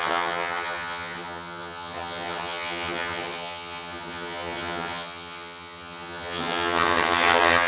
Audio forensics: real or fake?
fake